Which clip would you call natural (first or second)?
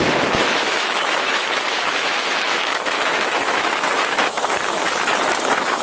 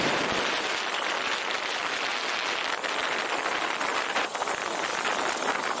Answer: second